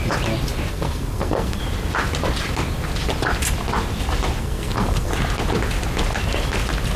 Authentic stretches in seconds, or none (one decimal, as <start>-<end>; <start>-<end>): 0.0-0.7; 1.6-4.4; 5.1-7.0